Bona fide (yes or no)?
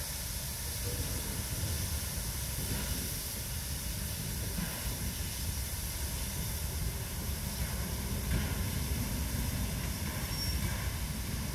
yes